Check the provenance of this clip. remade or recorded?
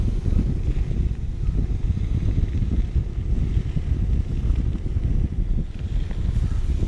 recorded